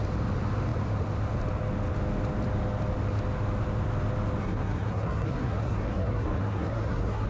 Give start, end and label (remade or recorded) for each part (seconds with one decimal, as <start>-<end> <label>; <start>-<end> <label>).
0.0-4.4 recorded; 4.4-7.3 remade